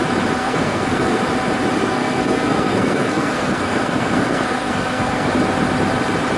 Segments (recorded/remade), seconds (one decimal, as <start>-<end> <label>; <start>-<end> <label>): 0.0-0.4 recorded; 0.4-1.2 remade; 1.2-1.8 recorded; 1.8-5.3 remade; 5.3-6.4 recorded